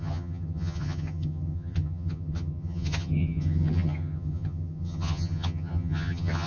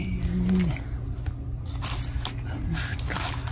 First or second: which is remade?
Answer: first